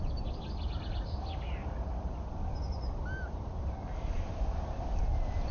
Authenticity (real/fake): real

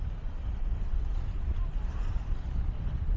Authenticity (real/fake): real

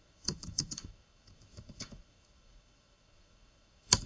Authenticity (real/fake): fake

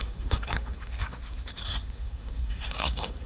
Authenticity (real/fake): fake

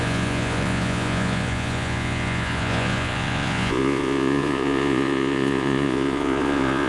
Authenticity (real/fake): fake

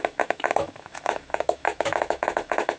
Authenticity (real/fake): fake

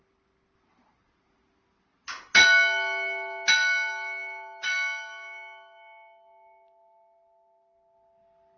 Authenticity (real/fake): real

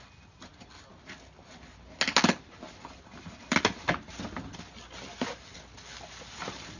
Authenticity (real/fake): real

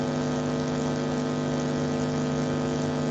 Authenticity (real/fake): real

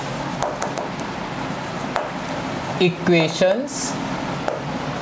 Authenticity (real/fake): real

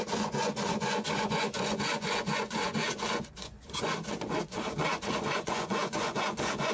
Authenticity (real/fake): fake